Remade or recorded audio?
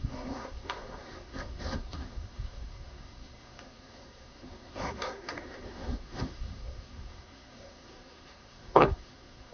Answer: remade